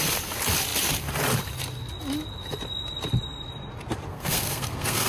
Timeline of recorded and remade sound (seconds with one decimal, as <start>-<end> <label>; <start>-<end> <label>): 0.0-4.1 recorded; 4.1-5.1 remade